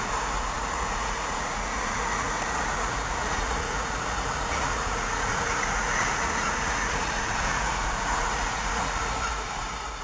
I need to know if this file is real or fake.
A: fake